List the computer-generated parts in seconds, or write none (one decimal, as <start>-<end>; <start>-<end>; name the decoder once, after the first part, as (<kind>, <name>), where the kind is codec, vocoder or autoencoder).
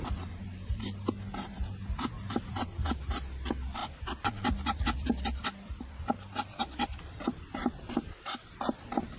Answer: 3.8-9.2 (vocoder, BigVGAN v2)